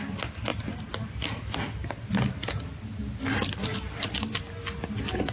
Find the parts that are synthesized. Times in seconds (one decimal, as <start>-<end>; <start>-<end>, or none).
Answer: none